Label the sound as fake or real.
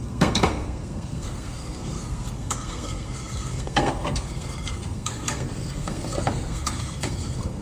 fake